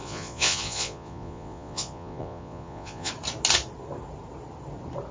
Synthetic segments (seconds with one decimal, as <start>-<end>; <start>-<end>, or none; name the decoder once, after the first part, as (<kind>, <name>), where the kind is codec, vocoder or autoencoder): 0.0-3.1 (vocoder, Vocos)